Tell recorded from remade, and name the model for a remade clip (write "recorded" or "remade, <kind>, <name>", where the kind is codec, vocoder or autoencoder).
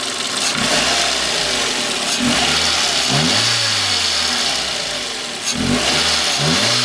recorded